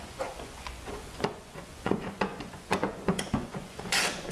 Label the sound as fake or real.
fake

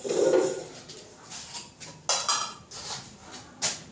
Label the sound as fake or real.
real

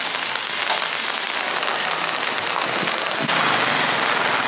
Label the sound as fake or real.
real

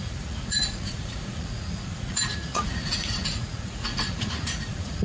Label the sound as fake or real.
fake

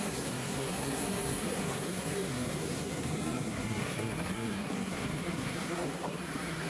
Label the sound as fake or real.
fake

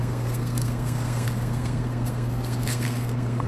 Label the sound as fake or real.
fake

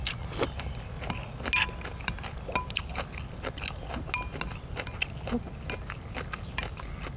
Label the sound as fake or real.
real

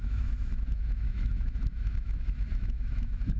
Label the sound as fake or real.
fake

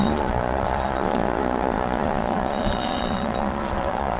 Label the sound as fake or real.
fake